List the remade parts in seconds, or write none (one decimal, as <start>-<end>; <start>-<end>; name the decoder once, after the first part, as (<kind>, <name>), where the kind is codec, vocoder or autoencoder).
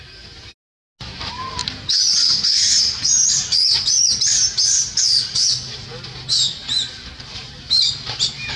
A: none